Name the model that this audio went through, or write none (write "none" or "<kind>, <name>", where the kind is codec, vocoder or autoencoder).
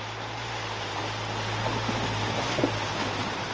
none